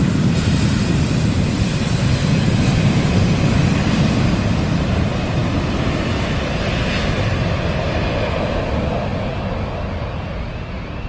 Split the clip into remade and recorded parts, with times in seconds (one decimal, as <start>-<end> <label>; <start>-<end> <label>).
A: 0.0-11.1 recorded